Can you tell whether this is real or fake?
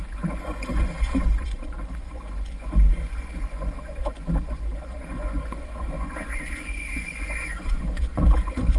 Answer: fake